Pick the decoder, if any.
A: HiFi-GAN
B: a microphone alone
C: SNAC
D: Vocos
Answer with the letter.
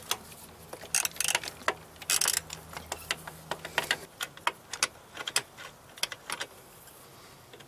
B